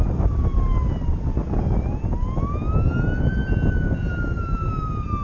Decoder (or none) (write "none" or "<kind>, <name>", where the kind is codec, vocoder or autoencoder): none